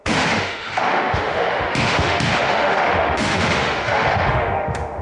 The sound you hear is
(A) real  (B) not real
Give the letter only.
B